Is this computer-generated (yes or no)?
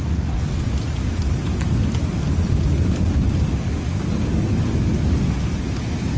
no